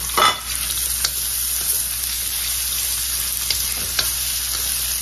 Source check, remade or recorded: recorded